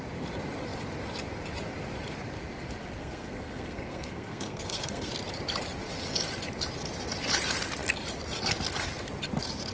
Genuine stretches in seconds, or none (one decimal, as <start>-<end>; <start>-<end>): 0.0-3.0; 5.1-9.7